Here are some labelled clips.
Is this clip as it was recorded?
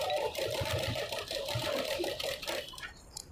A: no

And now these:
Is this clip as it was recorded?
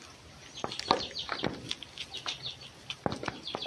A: yes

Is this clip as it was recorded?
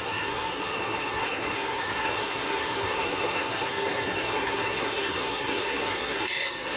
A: no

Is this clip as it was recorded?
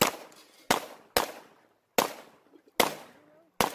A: yes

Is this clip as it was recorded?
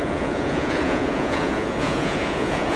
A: no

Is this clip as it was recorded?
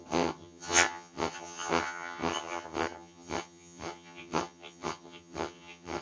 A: no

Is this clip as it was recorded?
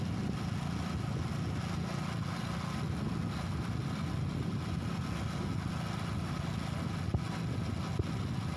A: yes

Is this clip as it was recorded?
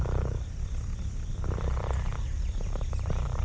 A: yes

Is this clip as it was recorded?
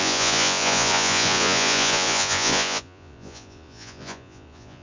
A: no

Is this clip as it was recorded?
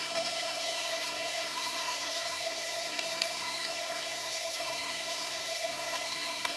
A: no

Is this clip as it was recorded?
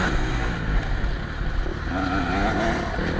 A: yes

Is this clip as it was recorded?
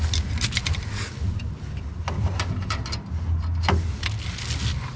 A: yes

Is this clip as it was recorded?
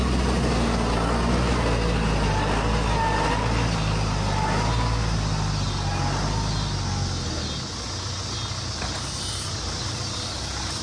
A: yes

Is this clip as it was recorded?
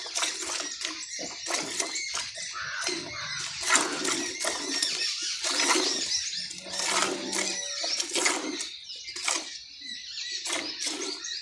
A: yes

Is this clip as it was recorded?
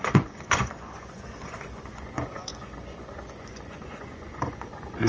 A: no